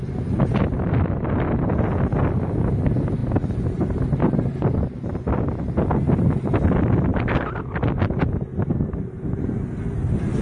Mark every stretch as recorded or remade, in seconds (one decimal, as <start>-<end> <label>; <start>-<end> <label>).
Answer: 0.0-10.4 recorded